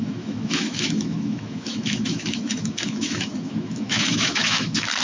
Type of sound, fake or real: fake